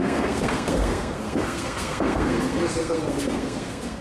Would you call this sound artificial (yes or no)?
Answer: yes